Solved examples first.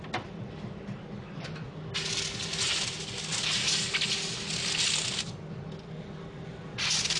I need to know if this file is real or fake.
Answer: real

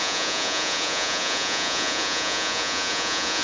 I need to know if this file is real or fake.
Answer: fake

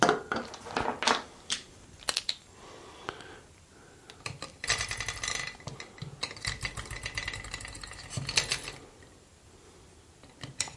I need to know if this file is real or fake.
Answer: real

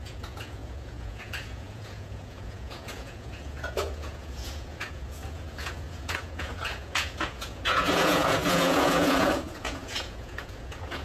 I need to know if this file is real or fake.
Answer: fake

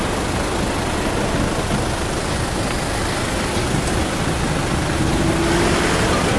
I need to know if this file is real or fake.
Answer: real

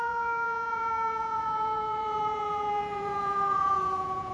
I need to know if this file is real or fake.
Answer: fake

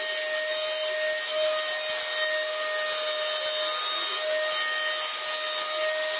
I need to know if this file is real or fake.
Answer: real